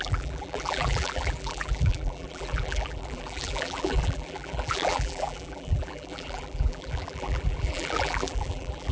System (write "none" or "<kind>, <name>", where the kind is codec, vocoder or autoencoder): vocoder, BigVGAN v2